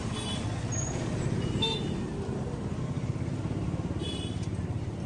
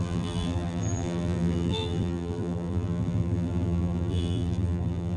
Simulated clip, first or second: second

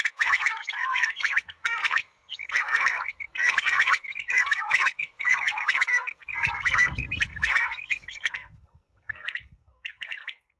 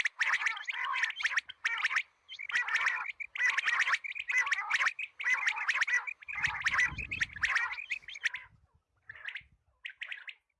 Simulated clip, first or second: first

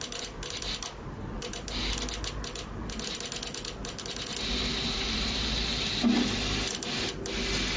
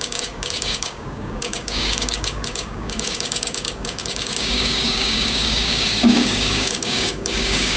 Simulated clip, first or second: second